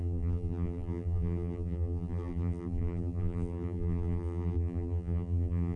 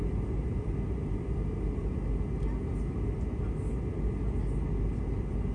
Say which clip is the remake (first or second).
first